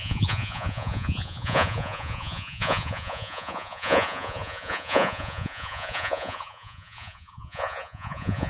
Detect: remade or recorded remade